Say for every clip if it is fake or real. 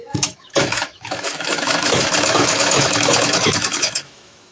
fake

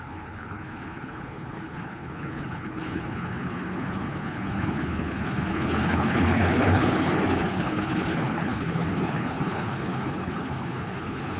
fake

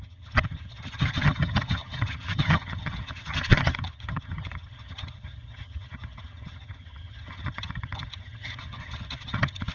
fake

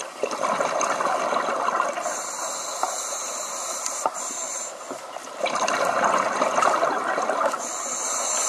real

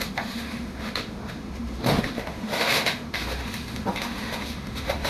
fake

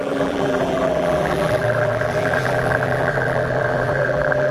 fake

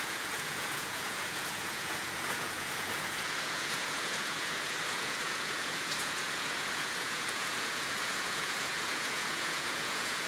fake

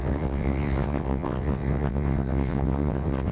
fake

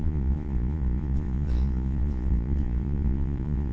fake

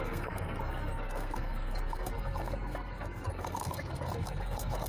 fake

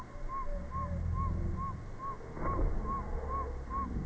real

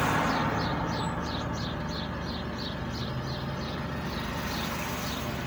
real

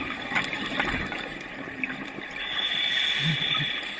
real